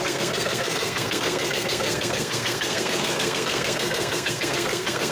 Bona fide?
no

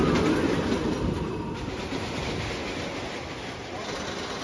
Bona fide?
yes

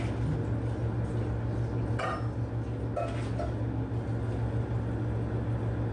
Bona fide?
yes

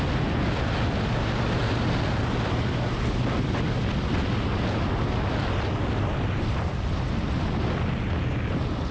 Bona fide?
yes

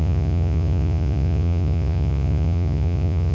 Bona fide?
no